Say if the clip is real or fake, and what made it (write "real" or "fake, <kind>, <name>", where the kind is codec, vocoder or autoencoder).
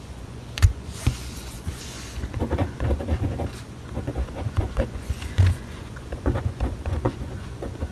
fake, vocoder, Vocos